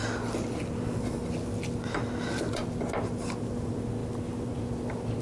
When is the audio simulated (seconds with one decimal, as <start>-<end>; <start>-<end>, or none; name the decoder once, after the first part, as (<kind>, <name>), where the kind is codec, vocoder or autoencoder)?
none